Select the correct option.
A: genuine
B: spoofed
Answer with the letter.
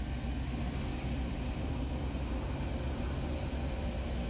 A